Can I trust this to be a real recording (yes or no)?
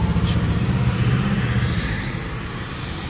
no